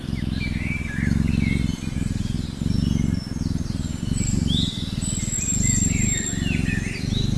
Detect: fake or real real